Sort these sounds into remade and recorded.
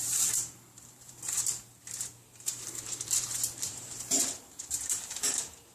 remade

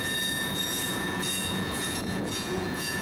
remade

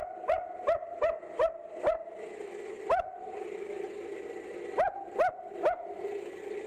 recorded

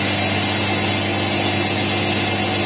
recorded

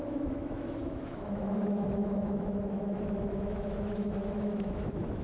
remade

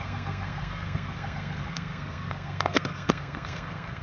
remade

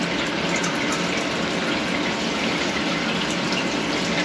recorded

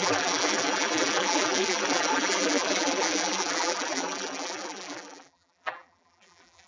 remade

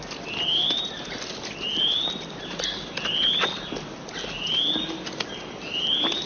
recorded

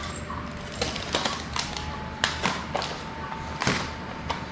remade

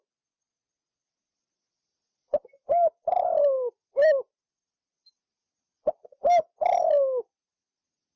recorded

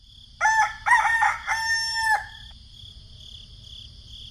recorded